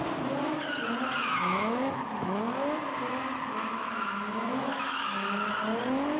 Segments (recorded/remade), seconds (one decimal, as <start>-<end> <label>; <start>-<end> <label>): 0.0-1.2 recorded; 1.2-2.4 remade; 2.4-3.1 recorded; 3.1-5.5 remade; 5.5-6.2 recorded